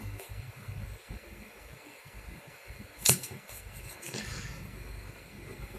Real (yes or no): no